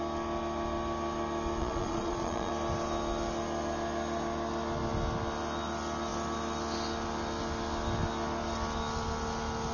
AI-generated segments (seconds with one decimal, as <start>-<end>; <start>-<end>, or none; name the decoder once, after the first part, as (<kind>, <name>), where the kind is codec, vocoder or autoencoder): 1.6-2.5 (vocoder, Vocos)